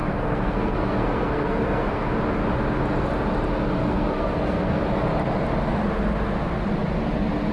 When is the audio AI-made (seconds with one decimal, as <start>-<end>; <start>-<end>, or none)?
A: 0.0-2.1; 3.8-4.8